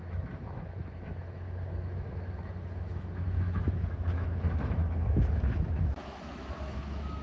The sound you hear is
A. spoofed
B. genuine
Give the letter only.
A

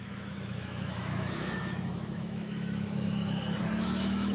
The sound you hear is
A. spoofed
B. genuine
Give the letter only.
A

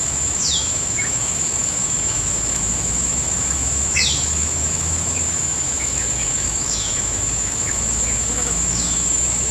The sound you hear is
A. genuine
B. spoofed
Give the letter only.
B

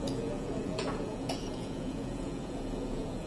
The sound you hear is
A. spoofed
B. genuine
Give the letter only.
A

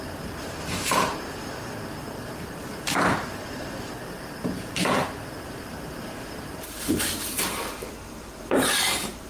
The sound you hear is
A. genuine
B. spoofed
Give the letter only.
B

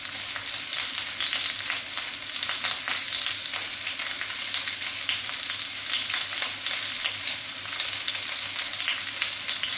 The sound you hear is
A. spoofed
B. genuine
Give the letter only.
B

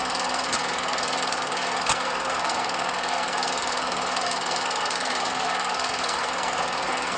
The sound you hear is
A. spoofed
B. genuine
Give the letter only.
A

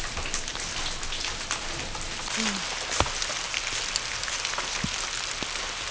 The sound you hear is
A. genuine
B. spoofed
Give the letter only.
A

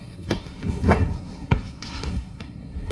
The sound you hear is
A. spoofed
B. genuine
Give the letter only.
A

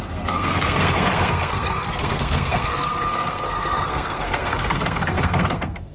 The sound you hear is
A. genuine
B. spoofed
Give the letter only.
B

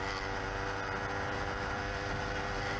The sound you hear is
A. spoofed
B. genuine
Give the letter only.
B